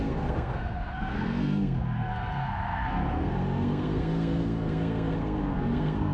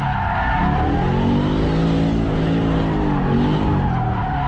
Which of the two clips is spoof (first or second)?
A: first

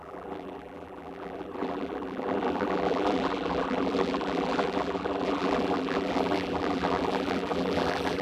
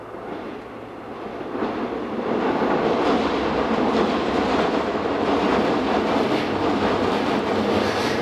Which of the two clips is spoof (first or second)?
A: first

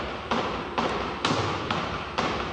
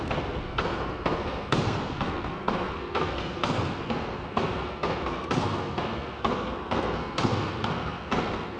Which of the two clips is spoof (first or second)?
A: second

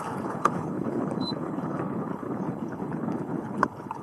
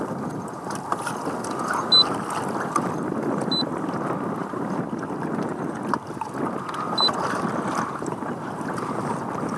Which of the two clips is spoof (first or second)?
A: first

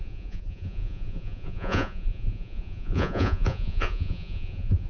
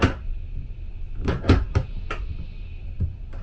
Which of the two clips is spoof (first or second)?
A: first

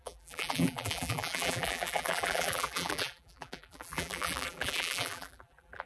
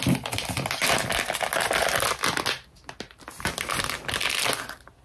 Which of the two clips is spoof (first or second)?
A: first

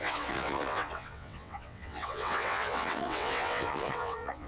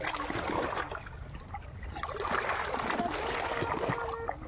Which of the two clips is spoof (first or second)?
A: first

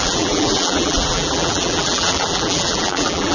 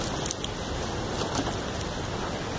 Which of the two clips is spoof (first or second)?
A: first